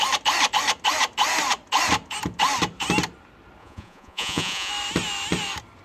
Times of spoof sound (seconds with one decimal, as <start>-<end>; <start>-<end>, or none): 3.6-4.7